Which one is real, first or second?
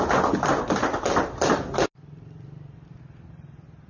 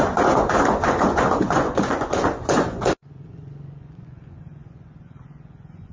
first